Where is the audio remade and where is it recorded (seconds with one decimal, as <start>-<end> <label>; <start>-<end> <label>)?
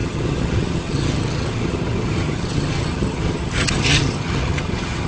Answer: 0.0-5.1 remade